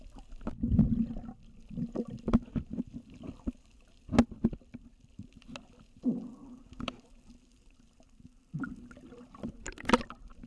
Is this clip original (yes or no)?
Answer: yes